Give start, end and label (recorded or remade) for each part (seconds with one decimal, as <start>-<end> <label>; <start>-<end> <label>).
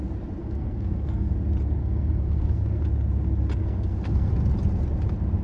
0.0-0.4 recorded; 0.4-1.3 remade; 1.3-1.8 recorded; 1.8-2.8 remade; 2.8-3.6 recorded; 3.6-4.3 remade; 4.3-5.4 recorded